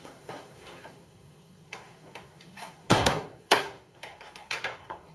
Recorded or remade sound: remade